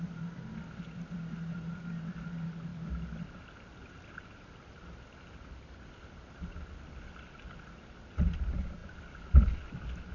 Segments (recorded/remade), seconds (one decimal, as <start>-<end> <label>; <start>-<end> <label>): 0.0-10.1 recorded